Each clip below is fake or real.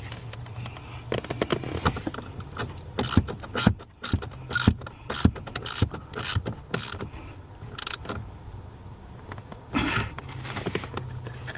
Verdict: real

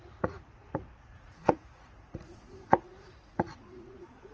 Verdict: fake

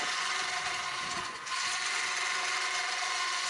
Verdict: fake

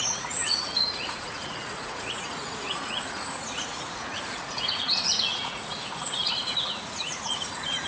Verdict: fake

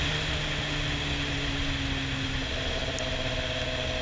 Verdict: real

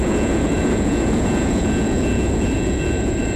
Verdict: fake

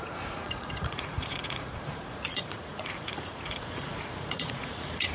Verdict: fake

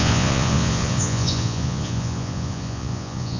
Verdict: fake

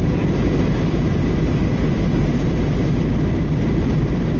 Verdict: real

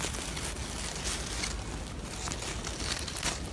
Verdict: real